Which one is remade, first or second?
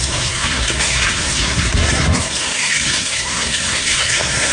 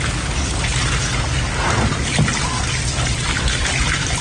first